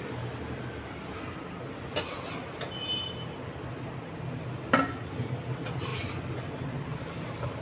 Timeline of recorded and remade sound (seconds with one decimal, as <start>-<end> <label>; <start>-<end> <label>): 0.0-7.6 recorded